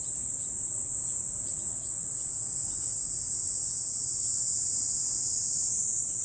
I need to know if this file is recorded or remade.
remade